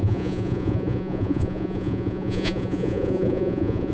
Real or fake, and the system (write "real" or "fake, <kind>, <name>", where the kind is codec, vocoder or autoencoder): fake, vocoder, Vocos